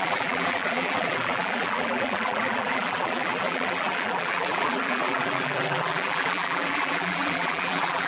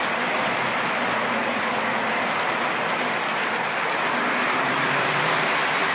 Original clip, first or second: second